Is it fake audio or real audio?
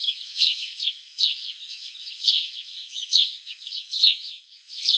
fake